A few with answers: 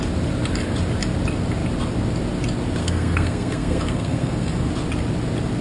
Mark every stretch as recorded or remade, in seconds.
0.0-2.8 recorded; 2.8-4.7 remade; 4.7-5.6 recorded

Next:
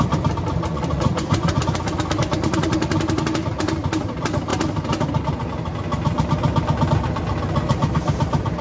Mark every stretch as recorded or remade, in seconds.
0.0-0.7 recorded; 0.7-1.6 remade; 1.6-8.6 recorded